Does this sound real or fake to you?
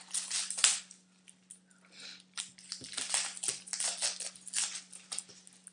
real